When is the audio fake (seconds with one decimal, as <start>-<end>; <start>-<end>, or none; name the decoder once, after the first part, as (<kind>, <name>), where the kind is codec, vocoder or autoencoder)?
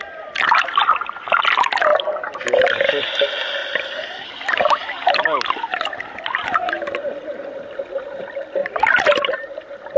3.6-4.3 (vocoder, BigVGAN v2); 8.6-9.3